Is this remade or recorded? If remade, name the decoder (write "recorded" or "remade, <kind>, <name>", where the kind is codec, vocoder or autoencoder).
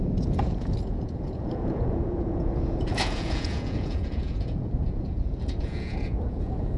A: remade, vocoder, Vocos